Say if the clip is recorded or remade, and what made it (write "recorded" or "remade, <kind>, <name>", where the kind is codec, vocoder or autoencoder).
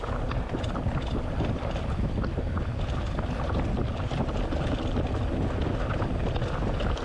recorded